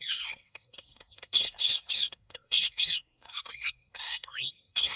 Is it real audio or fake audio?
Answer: fake